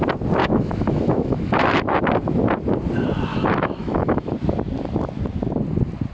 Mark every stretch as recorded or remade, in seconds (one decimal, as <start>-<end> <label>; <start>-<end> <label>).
0.0-0.4 recorded; 0.4-2.0 remade; 2.0-3.3 recorded; 3.3-4.3 remade; 4.3-6.1 recorded

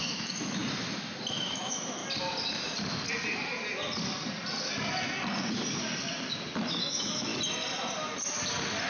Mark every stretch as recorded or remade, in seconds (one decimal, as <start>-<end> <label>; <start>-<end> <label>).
0.0-0.6 remade; 0.6-1.3 recorded; 1.3-2.0 remade; 2.0-6.8 recorded; 6.8-7.3 remade; 7.3-8.9 recorded